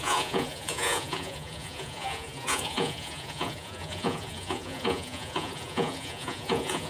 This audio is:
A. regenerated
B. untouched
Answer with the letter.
A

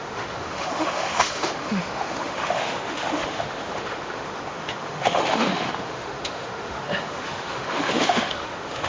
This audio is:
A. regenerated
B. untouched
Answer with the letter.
A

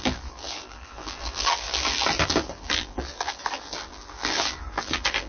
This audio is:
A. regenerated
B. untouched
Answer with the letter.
A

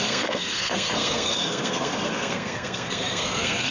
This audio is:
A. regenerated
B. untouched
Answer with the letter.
A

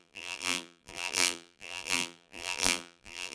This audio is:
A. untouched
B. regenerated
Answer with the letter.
B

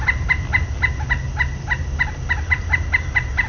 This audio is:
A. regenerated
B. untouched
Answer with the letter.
B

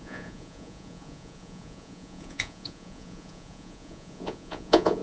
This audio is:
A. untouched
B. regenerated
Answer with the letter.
B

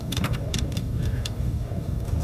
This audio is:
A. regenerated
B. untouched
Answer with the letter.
A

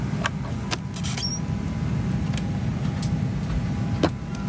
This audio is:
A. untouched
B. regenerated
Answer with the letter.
A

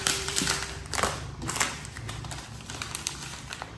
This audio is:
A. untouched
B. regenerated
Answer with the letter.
B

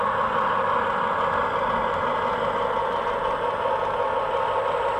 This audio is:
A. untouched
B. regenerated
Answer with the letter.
A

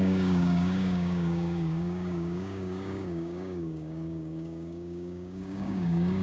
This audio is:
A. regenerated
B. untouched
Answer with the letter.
A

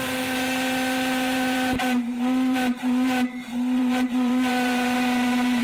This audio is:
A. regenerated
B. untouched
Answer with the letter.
A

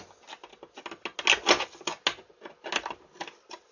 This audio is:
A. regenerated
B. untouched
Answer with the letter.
B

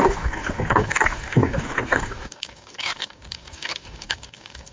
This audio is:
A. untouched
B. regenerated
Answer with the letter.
B